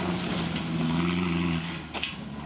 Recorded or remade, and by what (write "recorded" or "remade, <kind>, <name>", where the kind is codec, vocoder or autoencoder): recorded